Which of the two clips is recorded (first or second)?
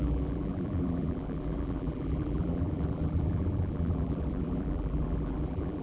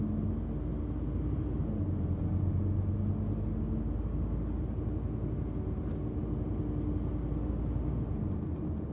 second